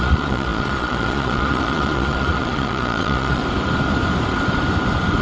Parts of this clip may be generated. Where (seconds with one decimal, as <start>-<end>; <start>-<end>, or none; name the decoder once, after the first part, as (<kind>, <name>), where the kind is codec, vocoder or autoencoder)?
0.0-3.4 (vocoder, Vocos)